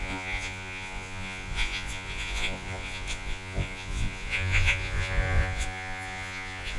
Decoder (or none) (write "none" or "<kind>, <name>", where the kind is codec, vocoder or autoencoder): vocoder, Vocos